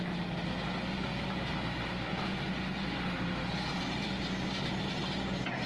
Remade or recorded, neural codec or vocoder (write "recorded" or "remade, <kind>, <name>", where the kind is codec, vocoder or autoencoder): recorded